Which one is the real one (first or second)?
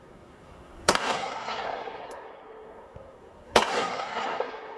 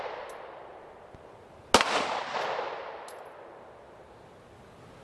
second